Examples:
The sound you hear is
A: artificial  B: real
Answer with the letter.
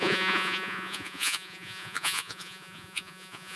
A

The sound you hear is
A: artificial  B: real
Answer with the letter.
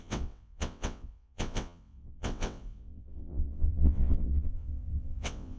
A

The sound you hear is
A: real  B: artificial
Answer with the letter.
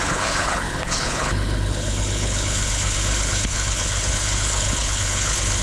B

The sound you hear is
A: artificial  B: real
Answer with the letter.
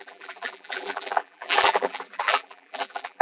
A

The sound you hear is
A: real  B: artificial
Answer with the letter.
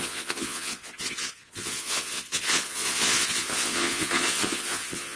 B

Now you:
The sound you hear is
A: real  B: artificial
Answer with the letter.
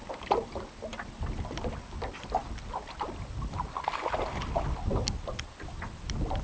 A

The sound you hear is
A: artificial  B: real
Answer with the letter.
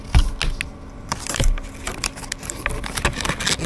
B